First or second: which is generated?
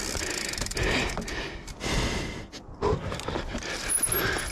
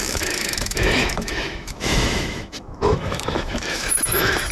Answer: second